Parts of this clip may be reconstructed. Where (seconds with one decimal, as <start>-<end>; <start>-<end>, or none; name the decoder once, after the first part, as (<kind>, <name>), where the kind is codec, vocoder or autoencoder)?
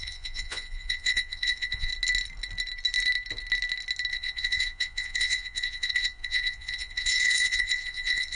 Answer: 0.0-1.9 (vocoder, Vocos); 4.1-8.3